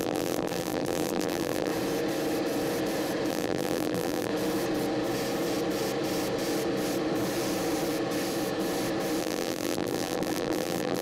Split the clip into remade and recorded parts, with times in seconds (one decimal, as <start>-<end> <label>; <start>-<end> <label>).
0.0-1.7 remade; 1.7-3.3 recorded; 3.3-4.3 remade; 4.3-9.2 recorded; 9.2-11.0 remade